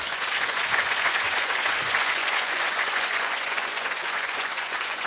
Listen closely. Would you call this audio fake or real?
fake